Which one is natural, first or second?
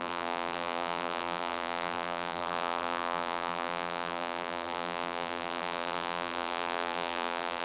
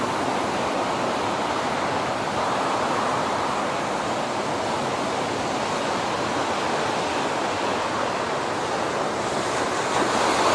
second